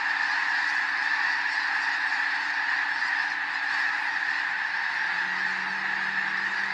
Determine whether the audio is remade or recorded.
recorded